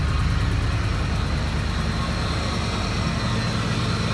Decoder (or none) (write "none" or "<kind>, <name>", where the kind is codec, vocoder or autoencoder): none